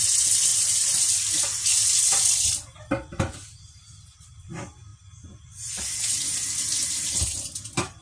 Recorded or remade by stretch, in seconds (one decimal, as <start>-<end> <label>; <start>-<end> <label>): 0.0-0.5 recorded; 0.5-1.4 remade; 1.4-8.0 recorded